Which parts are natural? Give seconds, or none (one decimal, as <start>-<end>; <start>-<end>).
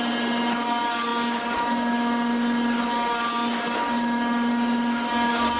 0.0-5.6